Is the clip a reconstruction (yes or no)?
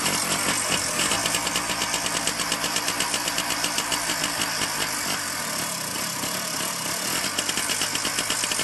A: no